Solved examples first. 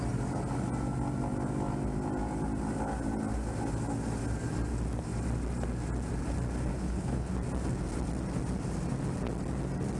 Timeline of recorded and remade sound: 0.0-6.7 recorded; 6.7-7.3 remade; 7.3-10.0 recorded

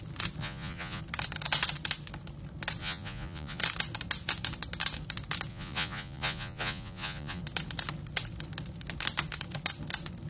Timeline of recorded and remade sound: 0.0-0.4 recorded; 0.4-1.0 remade; 1.0-2.8 recorded; 2.8-3.6 remade; 3.6-5.5 recorded; 5.5-7.4 remade; 7.4-10.3 recorded

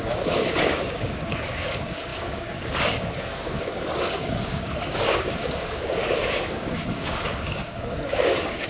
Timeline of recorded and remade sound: 0.0-8.7 remade

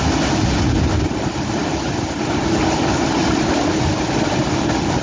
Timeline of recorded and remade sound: 0.0-5.0 recorded

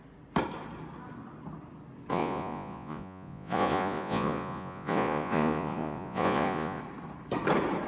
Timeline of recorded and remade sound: 0.0-2.1 recorded; 2.1-6.8 remade; 6.8-7.9 recorded

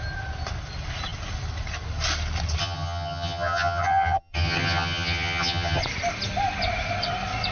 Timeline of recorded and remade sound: 0.0-2.6 recorded; 2.6-5.8 remade; 5.8-7.5 recorded

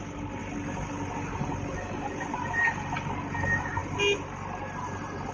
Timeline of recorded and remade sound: 0.0-5.3 recorded